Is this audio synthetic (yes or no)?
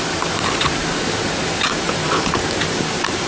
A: yes